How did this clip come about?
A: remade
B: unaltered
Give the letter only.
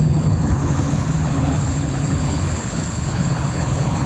A